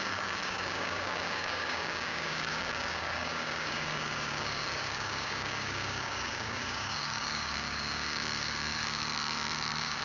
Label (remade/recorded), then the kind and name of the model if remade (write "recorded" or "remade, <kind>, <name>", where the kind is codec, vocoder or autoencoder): remade, codec, DAC